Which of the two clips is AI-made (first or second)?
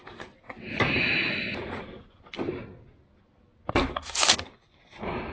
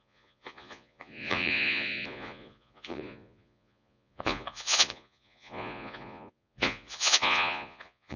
second